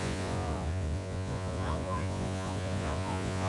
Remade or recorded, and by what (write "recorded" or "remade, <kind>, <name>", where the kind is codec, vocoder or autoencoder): remade, vocoder, Vocos